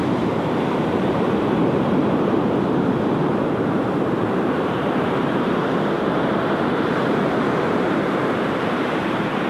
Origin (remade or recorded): remade